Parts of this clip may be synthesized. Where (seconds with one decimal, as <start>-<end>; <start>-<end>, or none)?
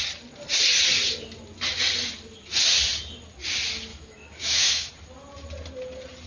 3.9-4.9